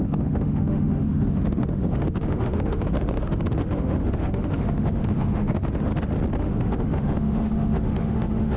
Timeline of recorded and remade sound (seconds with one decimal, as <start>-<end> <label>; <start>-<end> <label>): 0.0-5.9 remade; 5.9-6.4 recorded; 6.4-8.6 remade